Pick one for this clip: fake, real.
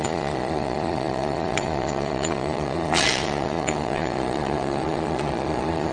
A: fake